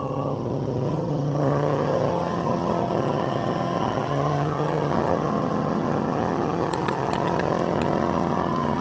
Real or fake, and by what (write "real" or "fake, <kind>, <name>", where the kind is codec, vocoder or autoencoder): fake, vocoder, HiFi-GAN